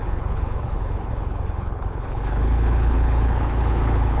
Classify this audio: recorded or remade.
remade